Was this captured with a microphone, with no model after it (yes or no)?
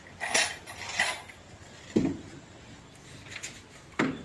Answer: yes